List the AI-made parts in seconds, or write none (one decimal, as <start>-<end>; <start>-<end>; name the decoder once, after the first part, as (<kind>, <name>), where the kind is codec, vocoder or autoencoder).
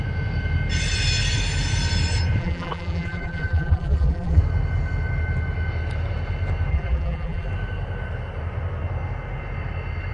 2.4-4.4 (vocoder, BigVGAN v2); 6.7-7.5